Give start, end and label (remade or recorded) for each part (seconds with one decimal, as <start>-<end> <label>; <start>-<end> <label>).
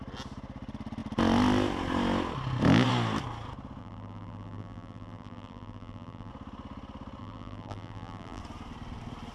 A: 0.0-3.8 recorded; 3.8-6.3 remade; 6.3-7.2 recorded; 7.2-8.4 remade; 8.4-9.3 recorded